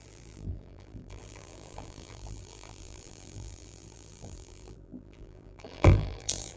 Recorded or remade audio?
remade